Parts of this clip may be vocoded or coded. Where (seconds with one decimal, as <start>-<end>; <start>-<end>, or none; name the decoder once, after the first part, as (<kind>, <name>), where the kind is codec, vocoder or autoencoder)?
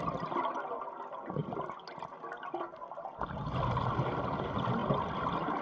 none